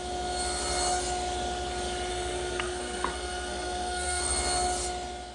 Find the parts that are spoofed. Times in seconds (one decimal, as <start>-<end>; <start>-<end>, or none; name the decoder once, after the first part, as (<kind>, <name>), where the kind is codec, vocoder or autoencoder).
2.1-4.2 (codec, SNAC)